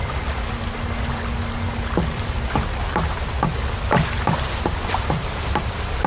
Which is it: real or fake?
real